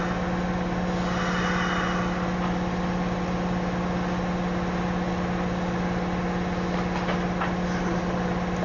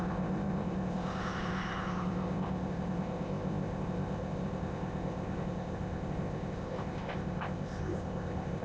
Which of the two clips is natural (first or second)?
first